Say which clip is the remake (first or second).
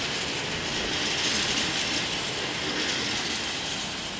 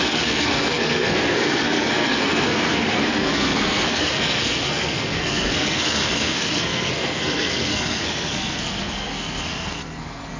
second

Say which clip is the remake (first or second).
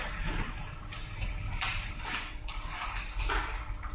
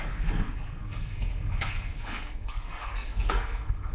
second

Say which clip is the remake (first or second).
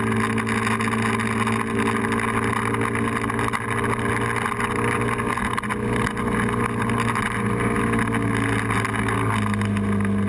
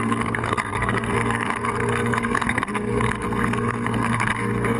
second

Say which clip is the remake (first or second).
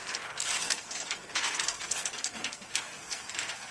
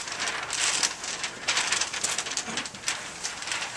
first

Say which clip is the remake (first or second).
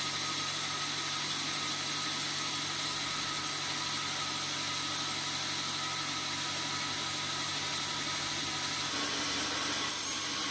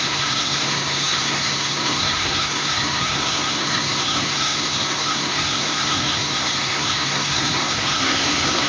second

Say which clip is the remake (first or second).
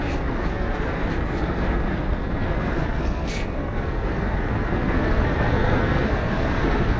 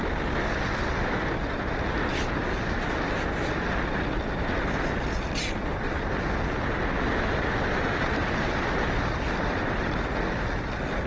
first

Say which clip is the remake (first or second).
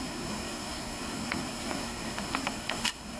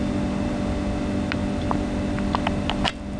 first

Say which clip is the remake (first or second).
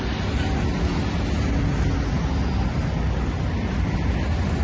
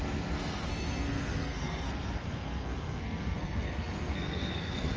second